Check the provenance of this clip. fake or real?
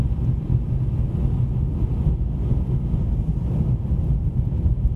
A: real